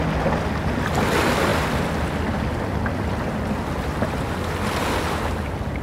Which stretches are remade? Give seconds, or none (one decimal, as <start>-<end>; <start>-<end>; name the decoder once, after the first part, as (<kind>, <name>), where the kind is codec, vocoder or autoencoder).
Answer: none